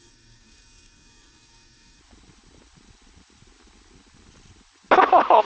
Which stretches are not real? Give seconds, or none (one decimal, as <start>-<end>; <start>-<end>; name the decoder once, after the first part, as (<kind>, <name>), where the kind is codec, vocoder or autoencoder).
0.0-2.0 (codec, SNAC)